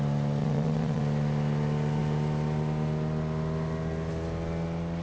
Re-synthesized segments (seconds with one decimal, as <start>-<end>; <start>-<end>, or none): 0.4-1.0